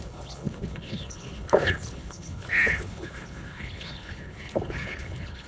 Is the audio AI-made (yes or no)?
yes